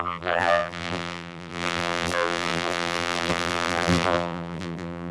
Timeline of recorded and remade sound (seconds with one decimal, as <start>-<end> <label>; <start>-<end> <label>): 0.0-5.1 remade